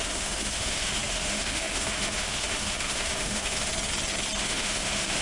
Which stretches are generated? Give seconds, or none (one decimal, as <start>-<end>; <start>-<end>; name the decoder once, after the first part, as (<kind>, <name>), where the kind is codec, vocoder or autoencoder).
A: 0.0-3.7 (autoencoder, DAC-VAE); 4.4-5.2

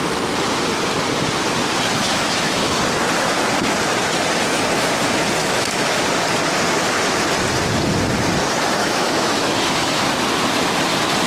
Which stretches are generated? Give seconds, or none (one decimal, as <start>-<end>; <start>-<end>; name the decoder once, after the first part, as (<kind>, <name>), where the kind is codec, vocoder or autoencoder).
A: 2.0-2.8 (autoencoder, DAC-VAE); 5.4-6.0; 8.8-10.0

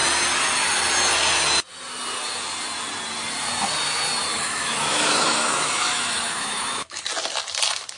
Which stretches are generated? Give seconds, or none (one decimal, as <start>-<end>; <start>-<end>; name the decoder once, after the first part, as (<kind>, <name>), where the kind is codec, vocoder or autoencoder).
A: 4.3-7.0 (autoencoder, DAC-VAE)

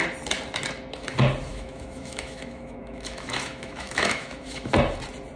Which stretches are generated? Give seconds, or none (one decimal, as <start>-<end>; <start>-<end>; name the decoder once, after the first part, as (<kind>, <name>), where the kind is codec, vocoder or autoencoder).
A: 1.5-4.7 (autoencoder, DAC-VAE)

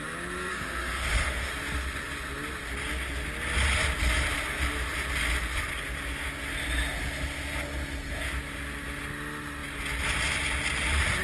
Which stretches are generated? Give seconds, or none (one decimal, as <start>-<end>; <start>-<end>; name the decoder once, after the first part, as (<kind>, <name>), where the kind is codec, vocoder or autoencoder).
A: 0.5-1.5 (autoencoder, DAC-VAE)

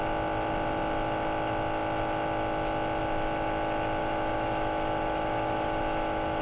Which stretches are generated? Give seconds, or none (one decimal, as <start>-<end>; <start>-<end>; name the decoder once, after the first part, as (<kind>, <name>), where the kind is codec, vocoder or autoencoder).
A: 4.0-6.4 (autoencoder, DAC-VAE)